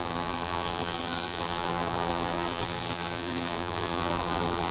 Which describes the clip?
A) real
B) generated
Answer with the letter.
B